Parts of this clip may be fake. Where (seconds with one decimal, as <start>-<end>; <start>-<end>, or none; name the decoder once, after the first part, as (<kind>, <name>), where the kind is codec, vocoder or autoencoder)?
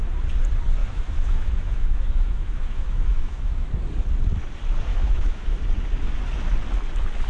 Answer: 0.8-3.7 (autoencoder, DAC-VAE); 4.9-5.6